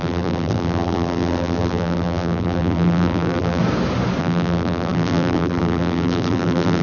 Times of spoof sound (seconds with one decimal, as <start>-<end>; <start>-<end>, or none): 0.0-3.6; 4.2-6.8